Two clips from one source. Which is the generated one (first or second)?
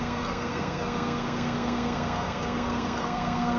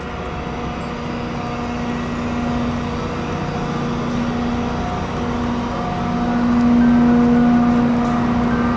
first